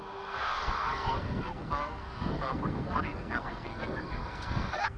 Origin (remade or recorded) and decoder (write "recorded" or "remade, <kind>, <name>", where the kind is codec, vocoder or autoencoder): remade, codec, SNAC